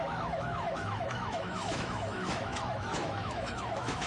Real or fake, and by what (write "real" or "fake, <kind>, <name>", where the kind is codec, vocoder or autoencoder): fake, autoencoder, DAC-VAE